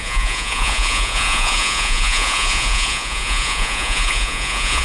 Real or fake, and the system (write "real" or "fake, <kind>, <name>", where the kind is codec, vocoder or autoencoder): fake, vocoder, Vocos